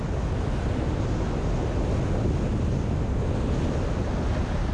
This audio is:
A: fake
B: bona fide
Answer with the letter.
B